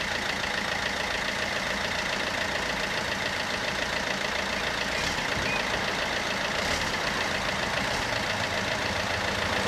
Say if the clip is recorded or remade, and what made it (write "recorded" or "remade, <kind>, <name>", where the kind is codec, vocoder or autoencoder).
recorded